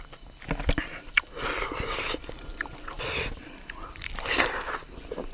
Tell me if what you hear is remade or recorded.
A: recorded